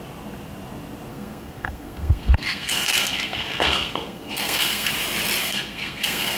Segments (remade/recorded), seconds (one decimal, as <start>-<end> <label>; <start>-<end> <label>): 0.0-1.1 recorded; 1.1-4.9 remade; 4.9-5.4 recorded; 5.4-6.4 remade